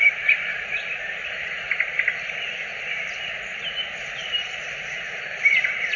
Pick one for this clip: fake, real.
real